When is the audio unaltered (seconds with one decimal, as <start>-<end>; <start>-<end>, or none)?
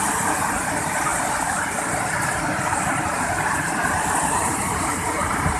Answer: 0.0-4.4